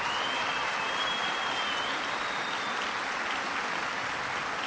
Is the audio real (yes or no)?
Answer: yes